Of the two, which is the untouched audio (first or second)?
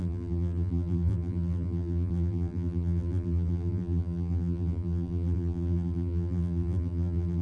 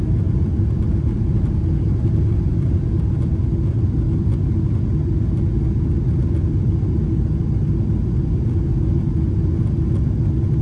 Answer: second